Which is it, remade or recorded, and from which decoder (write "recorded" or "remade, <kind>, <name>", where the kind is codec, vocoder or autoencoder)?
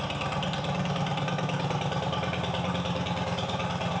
recorded